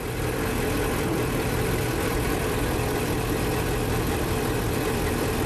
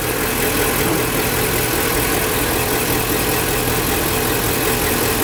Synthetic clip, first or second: first